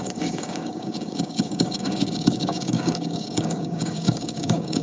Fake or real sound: fake